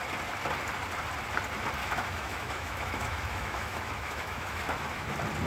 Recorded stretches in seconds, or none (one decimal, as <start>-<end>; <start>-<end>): 0.0-1.8; 5.1-5.5